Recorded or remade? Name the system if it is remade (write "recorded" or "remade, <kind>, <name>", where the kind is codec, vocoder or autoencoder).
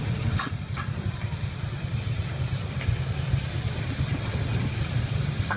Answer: recorded